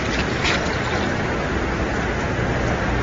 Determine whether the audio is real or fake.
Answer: real